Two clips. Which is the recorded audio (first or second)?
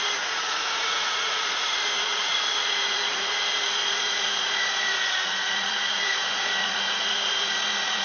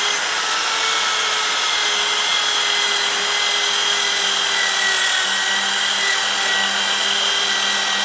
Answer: second